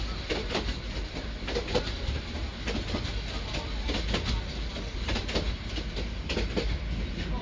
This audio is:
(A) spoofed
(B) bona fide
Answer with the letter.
B